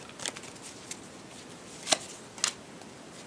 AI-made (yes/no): no